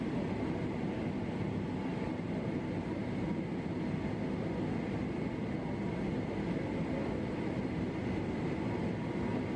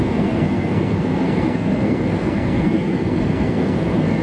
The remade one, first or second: second